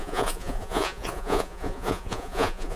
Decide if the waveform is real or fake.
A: fake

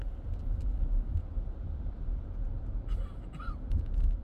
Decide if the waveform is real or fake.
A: real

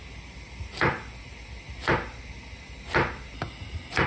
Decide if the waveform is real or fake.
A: real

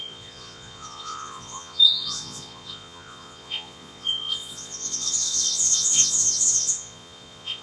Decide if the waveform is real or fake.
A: fake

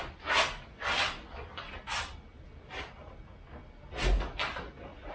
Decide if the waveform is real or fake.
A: real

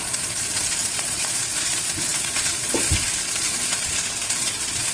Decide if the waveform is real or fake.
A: fake